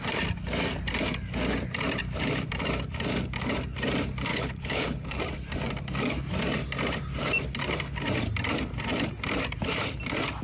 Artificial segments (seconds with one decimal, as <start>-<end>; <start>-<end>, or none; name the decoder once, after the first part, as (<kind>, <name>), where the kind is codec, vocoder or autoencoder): 4.3-5.2 (codec, HILCodec)

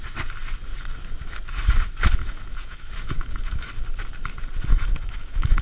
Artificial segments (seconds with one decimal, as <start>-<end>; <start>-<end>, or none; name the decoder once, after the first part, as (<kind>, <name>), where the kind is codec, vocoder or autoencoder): 2.2-3.7 (autoencoder, DAC-VAE); 4.7-5.6

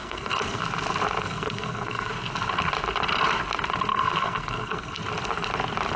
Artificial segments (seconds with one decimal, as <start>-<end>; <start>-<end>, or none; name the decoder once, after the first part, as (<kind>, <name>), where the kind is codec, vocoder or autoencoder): 0.0-0.6 (codec, SNAC); 1.2-2.1; 3.9-5.0

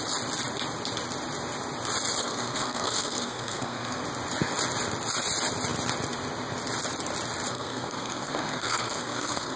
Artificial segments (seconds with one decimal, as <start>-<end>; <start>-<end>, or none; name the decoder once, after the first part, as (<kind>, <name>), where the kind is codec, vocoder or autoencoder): 2.2-4.0 (codec, SNAC); 7.5-9.6

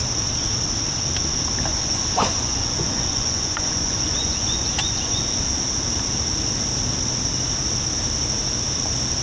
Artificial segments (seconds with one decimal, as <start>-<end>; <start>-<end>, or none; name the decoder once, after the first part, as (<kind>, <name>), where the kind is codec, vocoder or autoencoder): 1.7-5.2 (vocoder, Vocos)

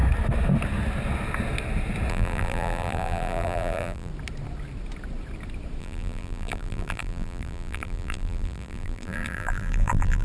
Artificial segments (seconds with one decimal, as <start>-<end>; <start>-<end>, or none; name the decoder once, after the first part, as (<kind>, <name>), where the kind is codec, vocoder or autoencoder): 2.1-4.1 (vocoder, BigVGAN v2); 5.8-10.2

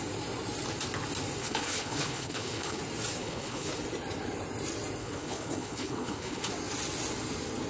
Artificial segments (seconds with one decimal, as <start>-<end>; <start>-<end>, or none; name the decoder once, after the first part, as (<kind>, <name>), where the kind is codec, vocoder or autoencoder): 1.4-2.8 (codec, HILCodec); 3.2-3.7; 5.0-6.4